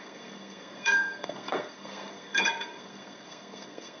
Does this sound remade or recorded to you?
remade